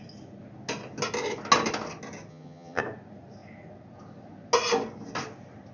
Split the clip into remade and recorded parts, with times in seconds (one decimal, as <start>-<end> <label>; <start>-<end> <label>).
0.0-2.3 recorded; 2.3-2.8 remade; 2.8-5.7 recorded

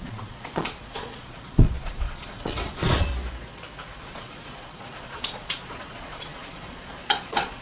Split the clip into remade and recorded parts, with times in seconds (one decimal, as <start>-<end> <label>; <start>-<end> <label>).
0.0-3.1 remade; 3.1-4.0 recorded; 4.0-7.6 remade

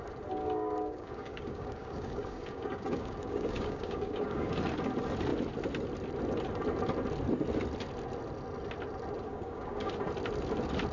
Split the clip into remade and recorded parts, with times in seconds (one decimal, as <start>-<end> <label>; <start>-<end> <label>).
0.0-0.4 recorded; 0.4-4.6 remade; 4.6-9.3 recorded; 9.3-9.9 remade; 9.9-10.9 recorded